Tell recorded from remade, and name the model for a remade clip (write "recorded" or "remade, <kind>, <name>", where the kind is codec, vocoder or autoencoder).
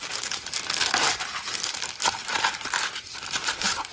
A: recorded